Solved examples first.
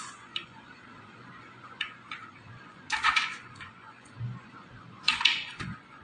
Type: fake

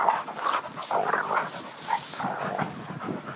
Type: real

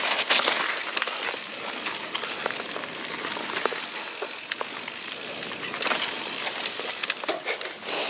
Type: real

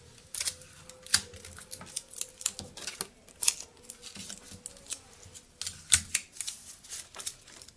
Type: real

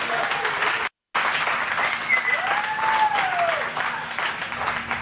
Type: real